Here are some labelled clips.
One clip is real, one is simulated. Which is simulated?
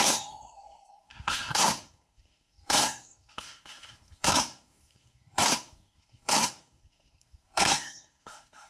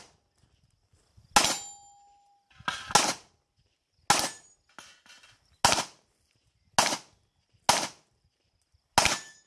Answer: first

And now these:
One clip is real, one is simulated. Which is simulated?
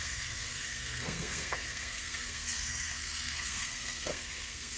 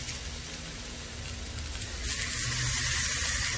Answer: first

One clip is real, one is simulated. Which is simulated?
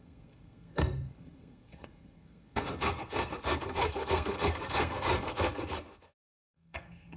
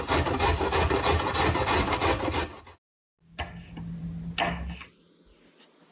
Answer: first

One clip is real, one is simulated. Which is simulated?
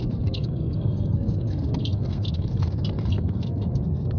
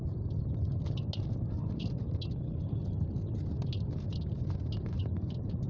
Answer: first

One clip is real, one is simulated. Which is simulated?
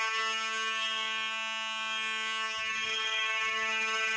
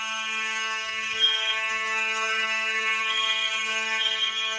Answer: second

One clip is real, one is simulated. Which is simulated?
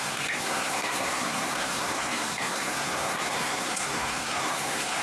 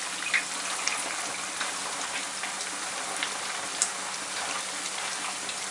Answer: first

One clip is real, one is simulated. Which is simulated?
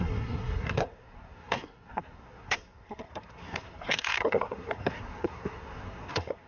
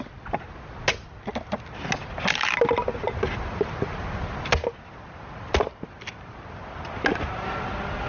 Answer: first